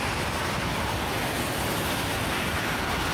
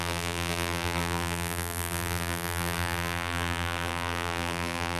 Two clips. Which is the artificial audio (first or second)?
second